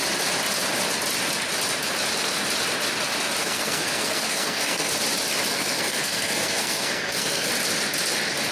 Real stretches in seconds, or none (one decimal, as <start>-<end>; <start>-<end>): 0.0-3.4; 4.9-5.5; 7.5-8.5